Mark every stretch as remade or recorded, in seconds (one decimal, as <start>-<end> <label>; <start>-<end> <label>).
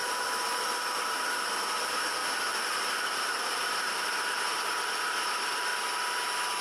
0.0-2.2 remade; 2.2-3.0 recorded; 3.0-5.7 remade; 5.7-6.6 recorded